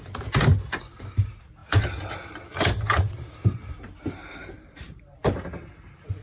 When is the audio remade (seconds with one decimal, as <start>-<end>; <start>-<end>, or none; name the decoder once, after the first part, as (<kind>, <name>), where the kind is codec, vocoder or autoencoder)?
4.4-5.3 (vocoder, BigVGAN v2)

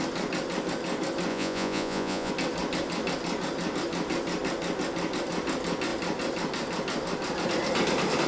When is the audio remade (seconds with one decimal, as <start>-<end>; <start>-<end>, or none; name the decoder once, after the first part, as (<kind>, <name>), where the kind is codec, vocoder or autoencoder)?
1.3-2.3 (vocoder, Vocos)

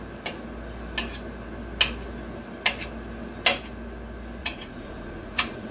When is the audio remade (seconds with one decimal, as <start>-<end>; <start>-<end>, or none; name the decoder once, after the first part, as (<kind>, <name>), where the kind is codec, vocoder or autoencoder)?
4.4-5.7 (vocoder, Vocos)